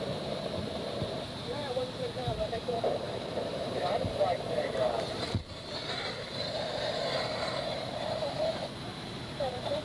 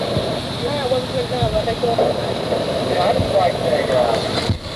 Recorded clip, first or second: second